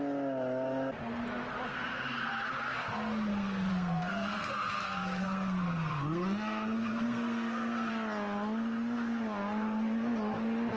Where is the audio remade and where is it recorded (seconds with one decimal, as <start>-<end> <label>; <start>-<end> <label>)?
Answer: 0.0-1.7 recorded; 1.7-2.3 remade; 2.3-3.3 recorded; 3.3-7.9 remade; 7.9-10.8 recorded